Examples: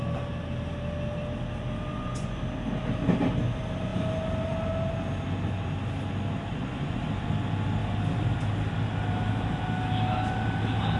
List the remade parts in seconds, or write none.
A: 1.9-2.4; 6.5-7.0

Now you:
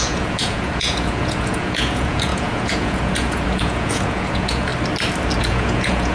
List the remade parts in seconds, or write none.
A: 0.0-4.7; 5.4-6.1

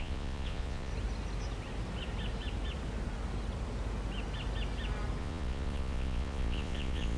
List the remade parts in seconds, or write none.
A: 0.0-0.9; 5.2-7.2

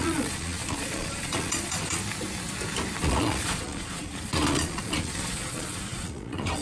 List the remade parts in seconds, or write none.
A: 0.0-2.0; 3.0-6.6

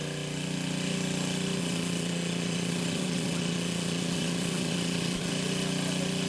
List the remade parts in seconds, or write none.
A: 1.6-5.3

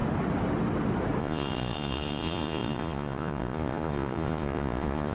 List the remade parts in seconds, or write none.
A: 1.2-5.1

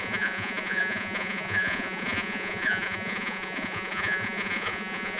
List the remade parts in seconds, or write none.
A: 0.0-5.2

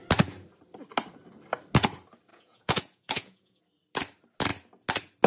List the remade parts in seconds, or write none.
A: 2.3-3.6